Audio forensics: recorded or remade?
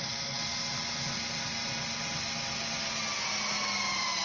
recorded